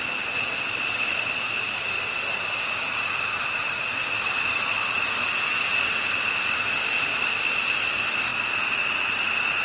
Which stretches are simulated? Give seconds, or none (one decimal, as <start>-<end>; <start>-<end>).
none